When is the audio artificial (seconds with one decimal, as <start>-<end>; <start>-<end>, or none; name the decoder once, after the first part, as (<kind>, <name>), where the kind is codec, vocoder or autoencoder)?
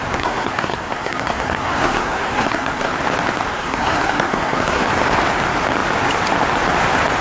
0.0-2.9 (codec, SNAC); 3.5-4.9